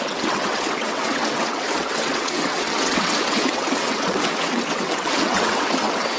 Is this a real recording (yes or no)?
no